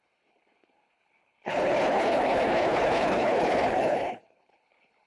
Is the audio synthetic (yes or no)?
yes